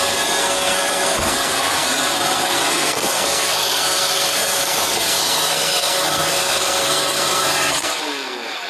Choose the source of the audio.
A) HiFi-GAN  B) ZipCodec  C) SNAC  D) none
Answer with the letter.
C